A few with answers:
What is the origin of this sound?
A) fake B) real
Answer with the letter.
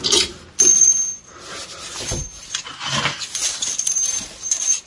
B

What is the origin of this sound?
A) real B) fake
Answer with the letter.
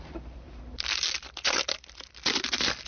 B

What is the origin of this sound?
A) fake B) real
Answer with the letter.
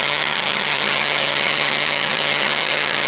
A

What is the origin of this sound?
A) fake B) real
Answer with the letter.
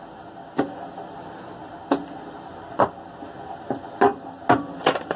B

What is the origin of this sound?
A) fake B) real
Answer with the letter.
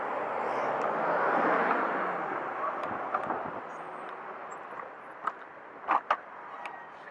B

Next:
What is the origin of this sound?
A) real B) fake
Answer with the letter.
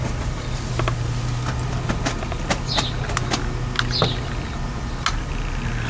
A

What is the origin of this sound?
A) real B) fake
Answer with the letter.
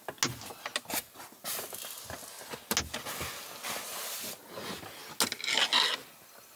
A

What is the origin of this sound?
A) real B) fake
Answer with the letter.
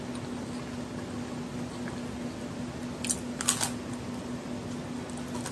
A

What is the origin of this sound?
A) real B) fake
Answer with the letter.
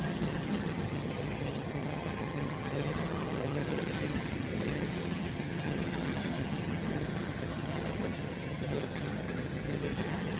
B